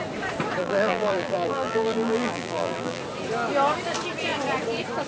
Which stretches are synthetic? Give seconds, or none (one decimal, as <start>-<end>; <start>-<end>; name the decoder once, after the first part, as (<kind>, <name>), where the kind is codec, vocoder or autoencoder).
0.6-3.0 (vocoder, BigVGAN v2)